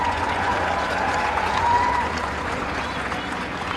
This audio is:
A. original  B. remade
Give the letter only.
B